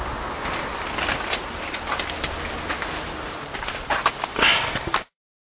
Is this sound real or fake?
real